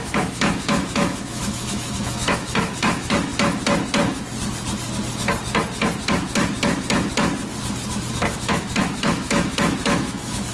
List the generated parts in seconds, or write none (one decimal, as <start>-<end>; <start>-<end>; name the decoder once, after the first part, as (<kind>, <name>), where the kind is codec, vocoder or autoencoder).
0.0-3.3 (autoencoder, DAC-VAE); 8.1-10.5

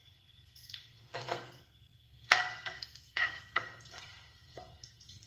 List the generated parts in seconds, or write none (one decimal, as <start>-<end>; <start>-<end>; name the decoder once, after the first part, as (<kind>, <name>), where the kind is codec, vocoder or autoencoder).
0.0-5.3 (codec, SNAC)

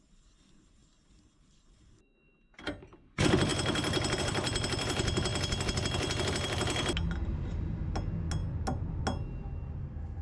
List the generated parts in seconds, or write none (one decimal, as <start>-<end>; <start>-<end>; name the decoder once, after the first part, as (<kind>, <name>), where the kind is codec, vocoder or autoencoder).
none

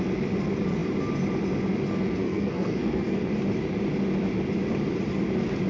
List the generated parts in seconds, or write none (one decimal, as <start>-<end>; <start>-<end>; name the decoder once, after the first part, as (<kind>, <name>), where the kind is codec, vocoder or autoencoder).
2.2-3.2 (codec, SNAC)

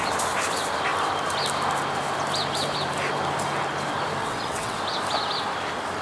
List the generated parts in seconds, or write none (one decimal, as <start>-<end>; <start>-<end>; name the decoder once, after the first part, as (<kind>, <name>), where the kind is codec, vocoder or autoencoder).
4.2-4.8 (vocoder, WaveNeXt)